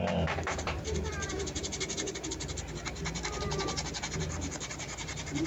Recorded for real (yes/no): no